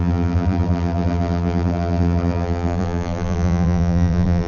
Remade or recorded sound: remade